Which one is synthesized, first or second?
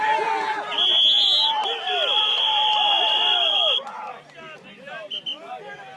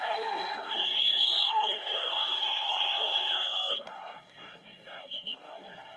second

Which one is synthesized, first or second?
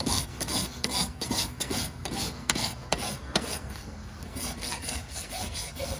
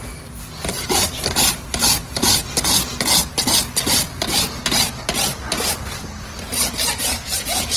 first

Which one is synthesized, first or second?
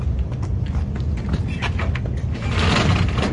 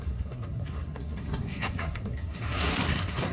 second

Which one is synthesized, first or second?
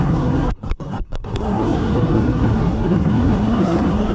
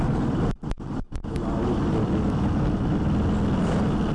first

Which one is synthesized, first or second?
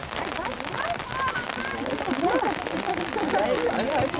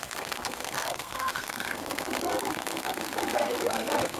second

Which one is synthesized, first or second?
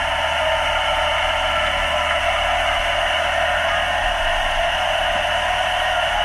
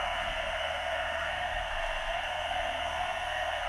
second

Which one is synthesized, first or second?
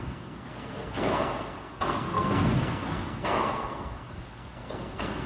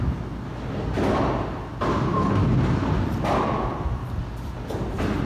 first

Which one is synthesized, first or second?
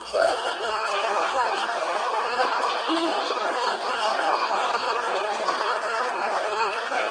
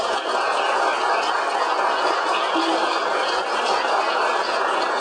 first